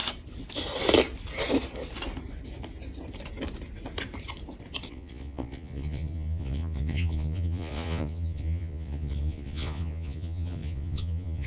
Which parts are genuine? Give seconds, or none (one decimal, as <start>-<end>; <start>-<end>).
0.0-4.9